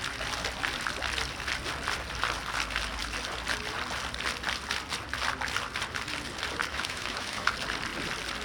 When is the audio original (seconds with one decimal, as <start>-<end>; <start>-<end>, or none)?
0.0-6.7; 7.5-8.4